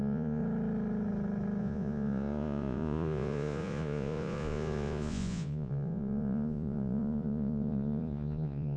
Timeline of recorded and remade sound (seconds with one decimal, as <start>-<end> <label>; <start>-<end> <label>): 0.0-0.4 remade; 0.4-1.6 recorded; 1.6-8.8 remade